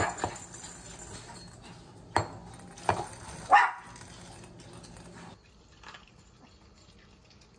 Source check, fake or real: real